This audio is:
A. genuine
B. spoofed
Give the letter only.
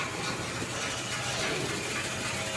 A